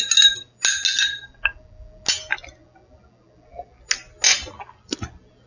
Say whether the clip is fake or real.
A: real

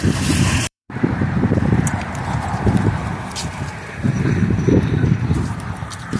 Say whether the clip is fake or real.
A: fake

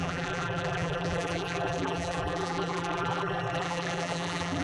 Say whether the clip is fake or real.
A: fake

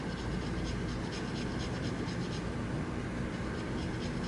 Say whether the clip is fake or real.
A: real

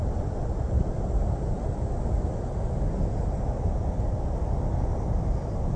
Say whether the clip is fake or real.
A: real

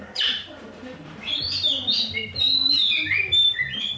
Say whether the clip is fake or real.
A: fake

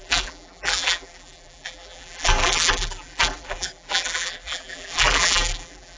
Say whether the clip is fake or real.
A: fake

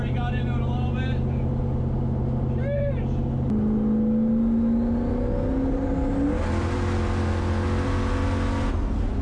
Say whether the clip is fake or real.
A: real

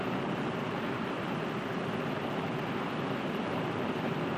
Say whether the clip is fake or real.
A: fake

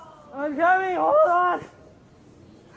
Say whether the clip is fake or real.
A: real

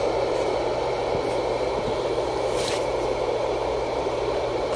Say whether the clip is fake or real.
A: fake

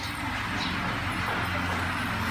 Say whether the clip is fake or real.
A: real